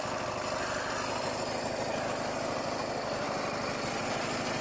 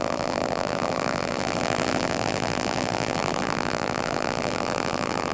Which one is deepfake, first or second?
second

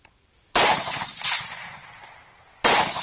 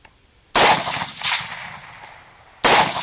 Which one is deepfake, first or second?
first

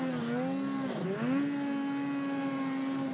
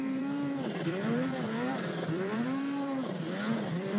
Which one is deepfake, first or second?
second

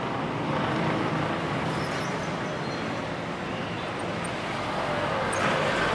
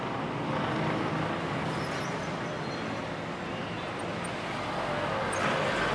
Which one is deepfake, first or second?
first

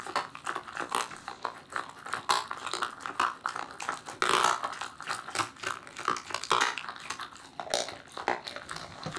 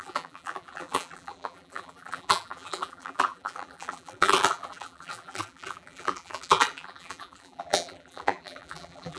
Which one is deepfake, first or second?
second